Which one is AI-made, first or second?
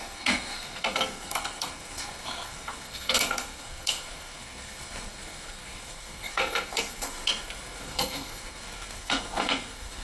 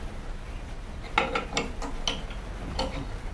first